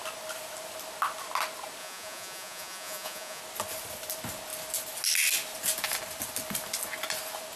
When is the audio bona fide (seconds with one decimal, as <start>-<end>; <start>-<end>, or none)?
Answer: 0.0-1.8; 3.4-7.6